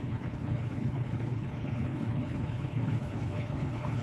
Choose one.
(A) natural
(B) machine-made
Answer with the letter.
B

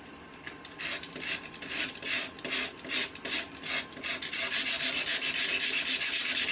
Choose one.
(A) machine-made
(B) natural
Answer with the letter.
B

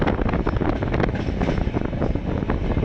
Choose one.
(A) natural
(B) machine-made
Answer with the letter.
A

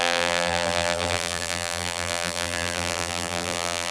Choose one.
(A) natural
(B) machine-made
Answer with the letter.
B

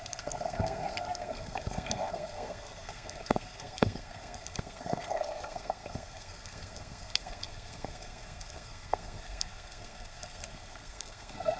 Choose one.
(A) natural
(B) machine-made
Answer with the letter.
B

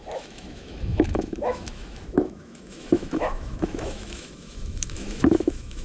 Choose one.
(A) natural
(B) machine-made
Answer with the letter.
B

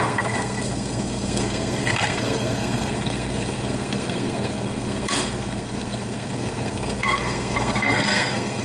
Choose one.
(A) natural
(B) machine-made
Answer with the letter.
B